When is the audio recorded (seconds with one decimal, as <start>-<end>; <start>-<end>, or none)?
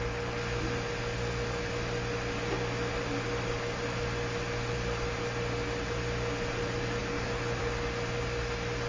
0.0-8.9